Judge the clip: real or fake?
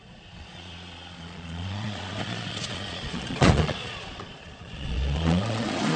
fake